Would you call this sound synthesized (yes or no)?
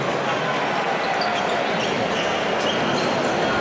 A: no